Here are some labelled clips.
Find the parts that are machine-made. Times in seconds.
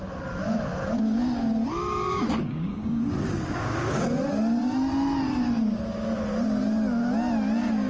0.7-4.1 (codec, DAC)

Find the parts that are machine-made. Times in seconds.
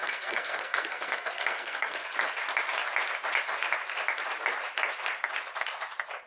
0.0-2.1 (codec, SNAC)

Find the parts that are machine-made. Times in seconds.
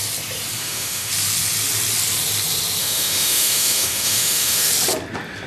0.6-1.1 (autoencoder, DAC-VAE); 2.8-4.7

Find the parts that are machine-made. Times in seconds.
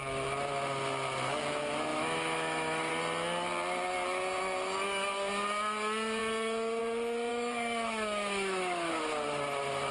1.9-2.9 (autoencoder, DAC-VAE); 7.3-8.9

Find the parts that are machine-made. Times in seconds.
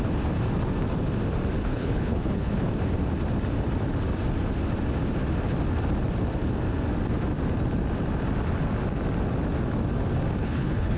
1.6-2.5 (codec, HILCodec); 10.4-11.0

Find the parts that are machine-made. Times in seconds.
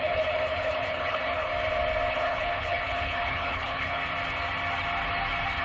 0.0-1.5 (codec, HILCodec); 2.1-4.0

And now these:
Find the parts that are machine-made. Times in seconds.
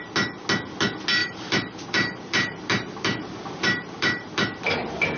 1.2-4.3 (vocoder, BigVGAN v2)